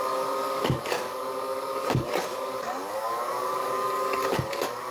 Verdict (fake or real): fake